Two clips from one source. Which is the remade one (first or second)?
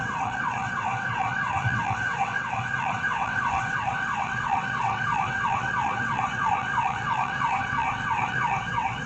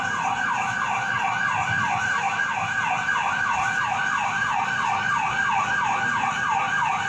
first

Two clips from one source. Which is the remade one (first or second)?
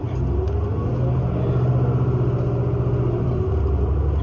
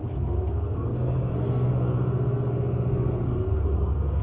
second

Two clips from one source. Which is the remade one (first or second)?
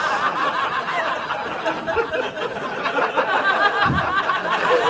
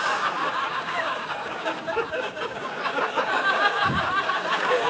second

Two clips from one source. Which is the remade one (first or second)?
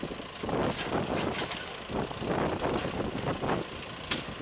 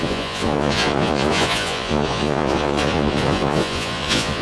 second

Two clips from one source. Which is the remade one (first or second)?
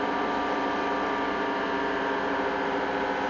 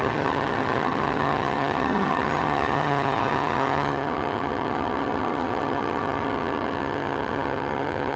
second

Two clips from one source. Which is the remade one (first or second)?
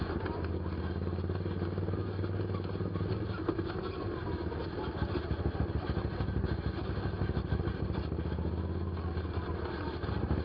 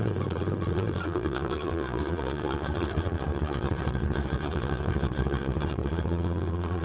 second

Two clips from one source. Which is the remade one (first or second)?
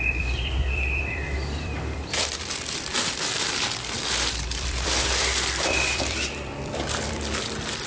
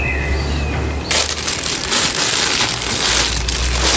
first